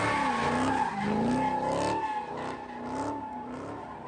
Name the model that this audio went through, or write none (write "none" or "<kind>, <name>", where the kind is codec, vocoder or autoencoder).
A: none